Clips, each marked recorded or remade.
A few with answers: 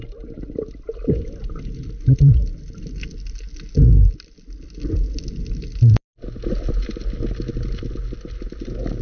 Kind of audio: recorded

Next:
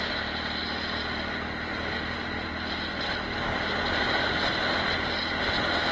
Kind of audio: recorded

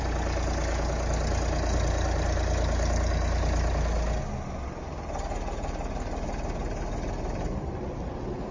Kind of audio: recorded